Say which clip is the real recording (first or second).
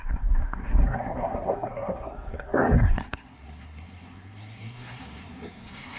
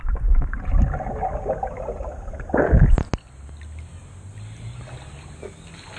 second